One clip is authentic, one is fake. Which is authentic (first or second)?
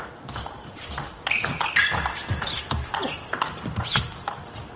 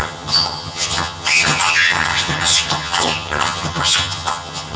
first